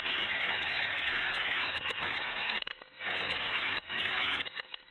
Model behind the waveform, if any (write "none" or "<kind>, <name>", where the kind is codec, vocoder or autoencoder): codec, SNAC